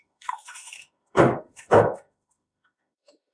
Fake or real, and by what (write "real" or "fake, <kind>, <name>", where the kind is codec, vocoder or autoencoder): fake, autoencoder, DAC-VAE